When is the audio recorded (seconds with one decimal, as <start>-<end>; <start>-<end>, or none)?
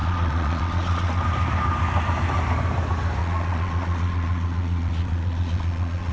1.2-3.2